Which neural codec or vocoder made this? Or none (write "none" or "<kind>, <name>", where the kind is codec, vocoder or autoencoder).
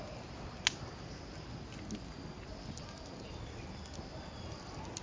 none